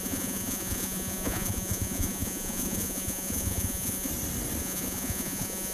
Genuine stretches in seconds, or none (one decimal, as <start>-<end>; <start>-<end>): 4.1-4.6